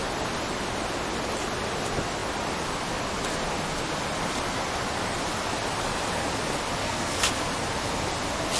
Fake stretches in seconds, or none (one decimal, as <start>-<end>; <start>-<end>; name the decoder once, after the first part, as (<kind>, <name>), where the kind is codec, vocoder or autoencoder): 6.8-7.3 (codec, SNAC)

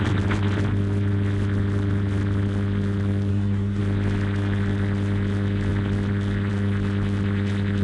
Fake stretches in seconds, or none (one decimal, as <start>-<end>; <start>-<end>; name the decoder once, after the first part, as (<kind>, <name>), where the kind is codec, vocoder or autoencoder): 3.3-3.8 (codec, SNAC)

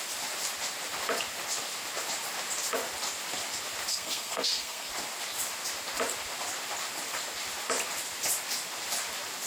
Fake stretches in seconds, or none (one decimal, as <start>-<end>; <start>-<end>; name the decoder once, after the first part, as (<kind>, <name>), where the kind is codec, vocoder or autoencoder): 3.9-4.9 (codec, SNAC)

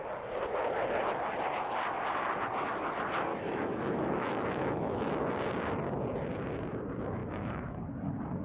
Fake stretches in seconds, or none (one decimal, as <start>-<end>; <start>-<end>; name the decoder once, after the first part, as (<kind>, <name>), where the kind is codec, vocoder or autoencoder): 3.3-5.2 (autoencoder, DAC-VAE); 7.2-7.8

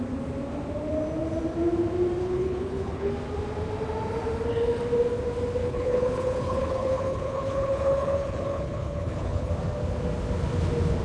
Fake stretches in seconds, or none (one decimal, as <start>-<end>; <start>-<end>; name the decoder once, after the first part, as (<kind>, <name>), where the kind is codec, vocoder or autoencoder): 2.2-3.1 (codec, HILCodec); 5.6-9.5

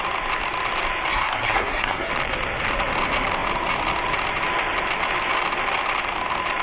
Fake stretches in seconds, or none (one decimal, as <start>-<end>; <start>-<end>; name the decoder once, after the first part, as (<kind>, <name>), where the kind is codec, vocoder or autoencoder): 1.1-2.1 (codec, SNAC)